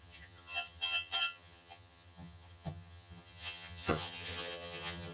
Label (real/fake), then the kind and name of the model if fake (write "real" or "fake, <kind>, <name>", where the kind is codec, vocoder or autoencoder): fake, vocoder, HiFi-GAN